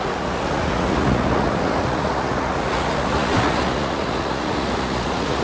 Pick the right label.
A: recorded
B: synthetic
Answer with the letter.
B